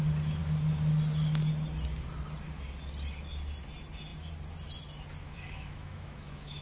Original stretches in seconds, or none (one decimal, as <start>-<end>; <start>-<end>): 0.0-5.2